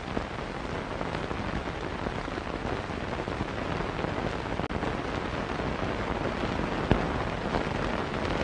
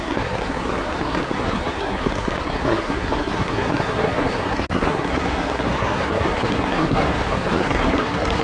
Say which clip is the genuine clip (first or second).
first